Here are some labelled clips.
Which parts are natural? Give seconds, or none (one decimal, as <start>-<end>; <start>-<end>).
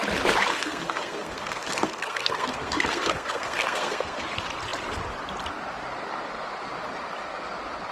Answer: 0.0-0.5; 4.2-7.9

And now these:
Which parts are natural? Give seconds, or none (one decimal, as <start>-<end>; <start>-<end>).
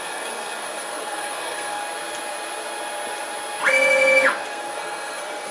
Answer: 1.8-4.5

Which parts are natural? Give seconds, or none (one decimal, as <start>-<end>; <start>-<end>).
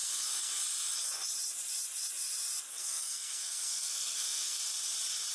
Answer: 0.6-2.7; 4.6-5.3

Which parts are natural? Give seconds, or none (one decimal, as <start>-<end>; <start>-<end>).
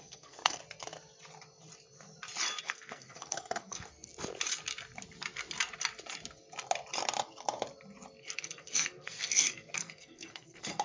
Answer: 0.6-2.6; 4.1-8.2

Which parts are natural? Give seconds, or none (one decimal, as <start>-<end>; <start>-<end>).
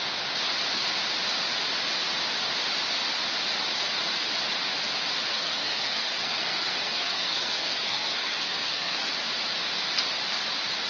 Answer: 0.0-5.3; 9.1-10.9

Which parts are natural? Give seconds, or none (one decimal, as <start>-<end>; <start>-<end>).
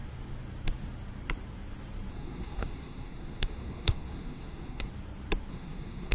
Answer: 0.0-2.1; 4.9-5.5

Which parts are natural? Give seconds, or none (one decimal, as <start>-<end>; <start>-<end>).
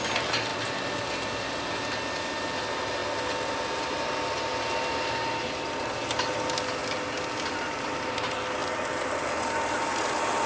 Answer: 0.0-10.5